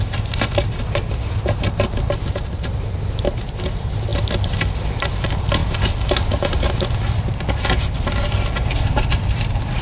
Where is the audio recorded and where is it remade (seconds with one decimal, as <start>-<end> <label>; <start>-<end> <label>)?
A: 0.0-4.1 remade; 4.1-4.7 recorded; 4.7-5.6 remade; 5.6-6.1 recorded; 6.1-9.8 remade

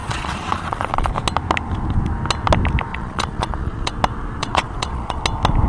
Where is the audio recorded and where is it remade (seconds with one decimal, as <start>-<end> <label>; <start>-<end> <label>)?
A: 0.0-1.1 remade; 1.1-2.9 recorded; 2.9-3.9 remade; 3.9-4.4 recorded; 4.4-5.2 remade; 5.2-5.7 recorded

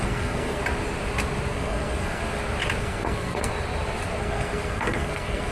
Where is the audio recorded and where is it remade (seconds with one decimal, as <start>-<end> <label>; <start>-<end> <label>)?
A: 0.0-0.6 remade; 0.6-1.5 recorded; 1.5-2.2 remade; 2.2-2.8 recorded; 2.8-3.5 remade; 3.5-4.2 recorded; 4.2-5.5 remade

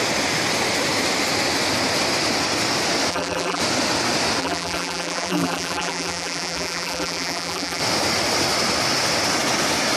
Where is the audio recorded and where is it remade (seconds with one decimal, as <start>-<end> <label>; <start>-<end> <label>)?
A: 0.0-3.1 recorded; 3.1-3.6 remade; 3.6-4.4 recorded; 4.4-7.8 remade; 7.8-10.0 recorded

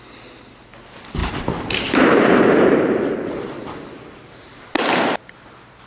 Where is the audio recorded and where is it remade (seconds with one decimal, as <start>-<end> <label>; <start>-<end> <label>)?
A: 0.0-1.2 recorded; 1.2-4.7 remade; 4.7-5.9 recorded

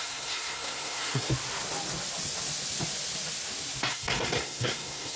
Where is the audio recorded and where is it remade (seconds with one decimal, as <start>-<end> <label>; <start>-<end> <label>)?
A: 0.0-1.3 remade; 1.3-3.9 recorded; 3.9-5.2 remade